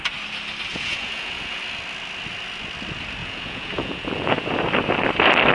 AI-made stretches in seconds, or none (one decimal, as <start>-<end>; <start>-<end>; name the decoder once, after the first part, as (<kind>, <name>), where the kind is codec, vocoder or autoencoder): 0.7-1.6 (vocoder, Vocos); 3.2-4.5